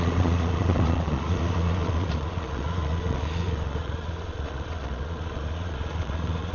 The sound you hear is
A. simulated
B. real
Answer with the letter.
A